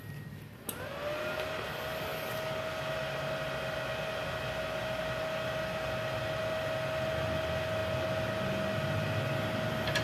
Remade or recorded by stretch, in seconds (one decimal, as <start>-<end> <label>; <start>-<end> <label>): 0.0-10.0 recorded